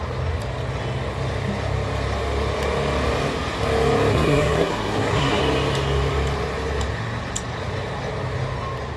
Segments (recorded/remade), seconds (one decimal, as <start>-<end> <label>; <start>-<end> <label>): 0.0-4.1 recorded; 4.1-5.4 remade; 5.4-9.0 recorded